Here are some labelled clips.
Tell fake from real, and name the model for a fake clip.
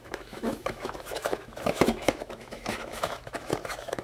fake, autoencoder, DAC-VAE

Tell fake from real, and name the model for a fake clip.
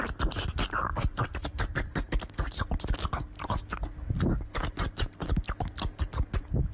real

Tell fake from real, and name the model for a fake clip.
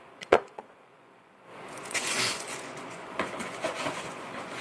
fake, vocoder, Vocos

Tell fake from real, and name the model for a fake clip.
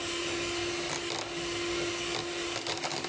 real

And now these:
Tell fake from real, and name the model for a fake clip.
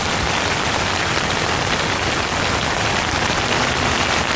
real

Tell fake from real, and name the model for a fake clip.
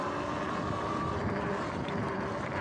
real